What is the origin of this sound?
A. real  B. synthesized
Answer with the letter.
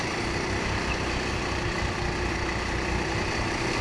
A